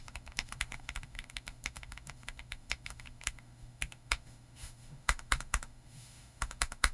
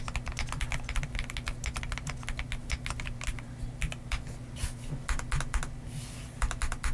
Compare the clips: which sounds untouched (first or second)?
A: second